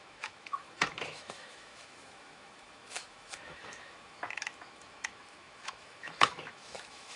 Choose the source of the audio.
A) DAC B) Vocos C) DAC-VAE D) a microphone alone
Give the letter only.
C